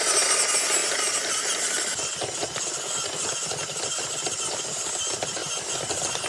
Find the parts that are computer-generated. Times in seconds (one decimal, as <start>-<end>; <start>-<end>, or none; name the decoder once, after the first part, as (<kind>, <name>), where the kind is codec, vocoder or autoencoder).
none